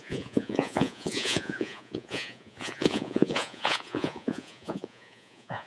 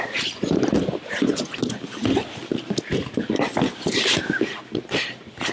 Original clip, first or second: second